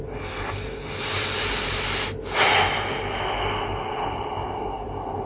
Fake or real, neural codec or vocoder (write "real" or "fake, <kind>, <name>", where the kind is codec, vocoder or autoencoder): real